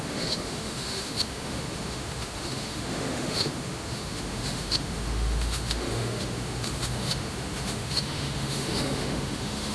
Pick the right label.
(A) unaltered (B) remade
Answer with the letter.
B